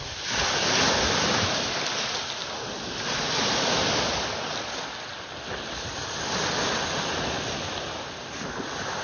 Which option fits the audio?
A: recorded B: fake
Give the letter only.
A